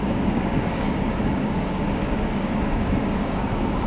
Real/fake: fake